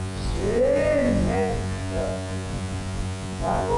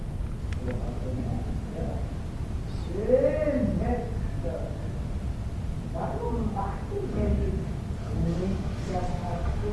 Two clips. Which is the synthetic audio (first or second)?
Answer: first